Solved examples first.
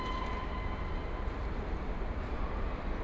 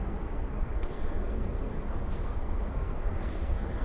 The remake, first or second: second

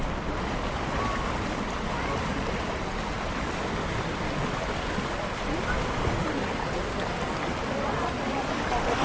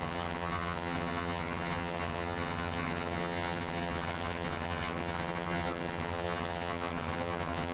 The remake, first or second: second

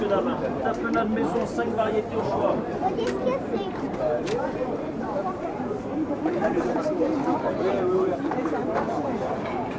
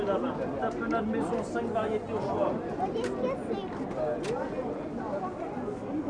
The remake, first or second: first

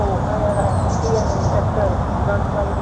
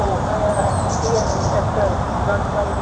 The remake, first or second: second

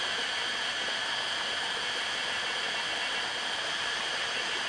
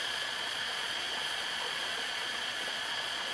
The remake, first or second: second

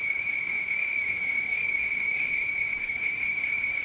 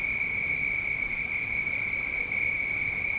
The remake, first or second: first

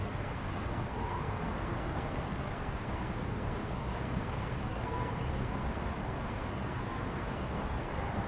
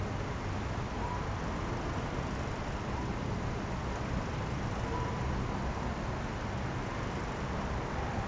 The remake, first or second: first